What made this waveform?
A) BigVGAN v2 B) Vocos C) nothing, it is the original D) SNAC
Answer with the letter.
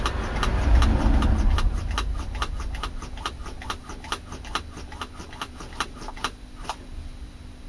C